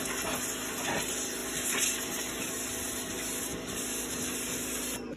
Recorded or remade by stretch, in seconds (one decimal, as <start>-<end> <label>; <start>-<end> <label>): 0.0-5.2 recorded